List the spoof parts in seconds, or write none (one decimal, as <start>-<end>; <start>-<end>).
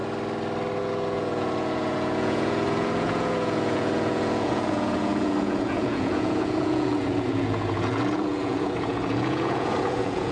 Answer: 0.8-10.3